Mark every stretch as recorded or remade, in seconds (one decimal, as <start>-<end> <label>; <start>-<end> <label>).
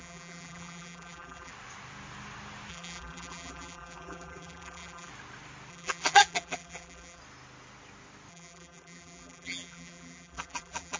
0.0-1.5 remade; 1.5-2.7 recorded; 2.7-5.1 remade; 5.1-5.7 recorded; 5.7-7.2 remade; 7.2-8.3 recorded; 8.3-11.0 remade